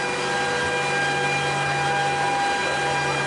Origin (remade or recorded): recorded